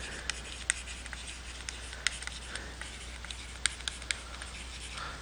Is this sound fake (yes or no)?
no